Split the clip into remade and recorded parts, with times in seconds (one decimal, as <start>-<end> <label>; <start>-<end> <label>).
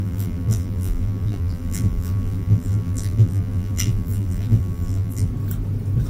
0.0-5.3 remade; 5.3-6.1 recorded